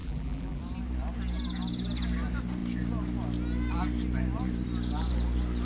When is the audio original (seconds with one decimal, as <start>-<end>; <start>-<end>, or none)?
0.6-5.7